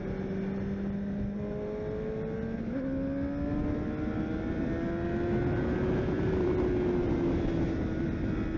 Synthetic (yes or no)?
no